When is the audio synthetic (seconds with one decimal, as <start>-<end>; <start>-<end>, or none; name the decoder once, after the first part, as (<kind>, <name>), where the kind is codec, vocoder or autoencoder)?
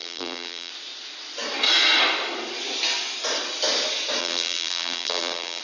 0.0-0.7 (vocoder, BigVGAN v2); 4.2-5.6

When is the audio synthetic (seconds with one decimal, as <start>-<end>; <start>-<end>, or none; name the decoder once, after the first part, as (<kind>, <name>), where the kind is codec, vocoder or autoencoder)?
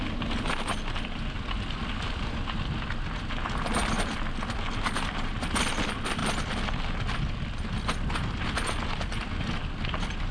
none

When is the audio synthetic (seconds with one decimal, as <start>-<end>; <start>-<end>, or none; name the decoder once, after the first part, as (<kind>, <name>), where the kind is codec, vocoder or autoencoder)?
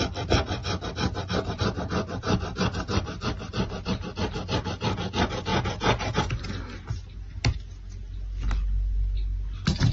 5.5-6.3 (vocoder, Vocos)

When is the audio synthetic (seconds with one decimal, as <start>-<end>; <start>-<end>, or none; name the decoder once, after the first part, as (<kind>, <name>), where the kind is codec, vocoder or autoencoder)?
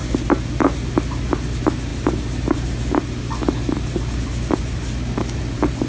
none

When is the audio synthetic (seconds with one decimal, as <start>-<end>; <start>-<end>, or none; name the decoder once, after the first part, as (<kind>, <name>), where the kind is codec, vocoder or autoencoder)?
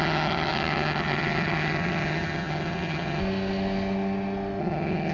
0.0-3.2 (vocoder, HiFi-GAN); 4.6-5.1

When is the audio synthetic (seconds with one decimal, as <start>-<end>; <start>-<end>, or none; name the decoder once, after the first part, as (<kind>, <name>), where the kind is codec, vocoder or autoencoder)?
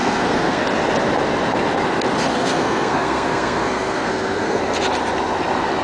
0.0-0.6 (codec, SNAC); 2.3-4.6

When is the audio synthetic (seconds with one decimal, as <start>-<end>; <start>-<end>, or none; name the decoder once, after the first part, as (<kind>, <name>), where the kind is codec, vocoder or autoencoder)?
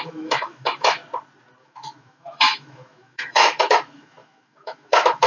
0.0-1.0 (autoencoder, DAC-VAE); 1.6-5.3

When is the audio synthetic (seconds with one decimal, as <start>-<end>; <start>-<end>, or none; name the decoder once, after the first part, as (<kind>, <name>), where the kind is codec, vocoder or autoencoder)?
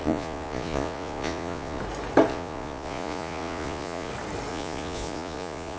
0.0-1.8 (vocoder, Vocos); 2.3-4.1; 4.5-5.8